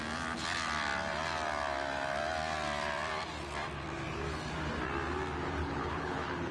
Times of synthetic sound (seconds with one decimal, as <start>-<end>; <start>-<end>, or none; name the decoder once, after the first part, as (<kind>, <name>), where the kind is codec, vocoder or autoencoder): 5.6-6.5 (codec, HILCodec)